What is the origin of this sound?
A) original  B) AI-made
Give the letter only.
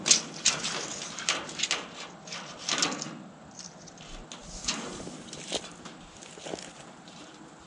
A